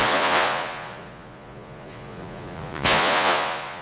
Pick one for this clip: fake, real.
fake